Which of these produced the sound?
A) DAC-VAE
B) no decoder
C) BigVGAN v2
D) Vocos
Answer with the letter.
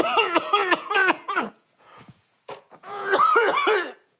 D